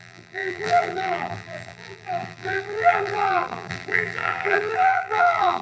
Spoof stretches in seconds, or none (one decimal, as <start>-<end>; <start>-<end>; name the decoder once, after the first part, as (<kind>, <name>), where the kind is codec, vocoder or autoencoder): 0.0-5.6 (vocoder, BigVGAN v2)